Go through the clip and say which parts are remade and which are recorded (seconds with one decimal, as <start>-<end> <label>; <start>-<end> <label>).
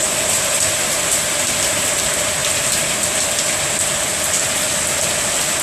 0.0-5.6 recorded